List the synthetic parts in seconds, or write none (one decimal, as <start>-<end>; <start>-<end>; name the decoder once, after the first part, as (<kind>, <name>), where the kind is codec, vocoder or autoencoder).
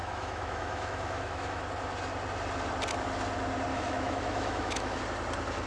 0.0-1.6 (autoencoder, DAC-VAE); 3.7-5.0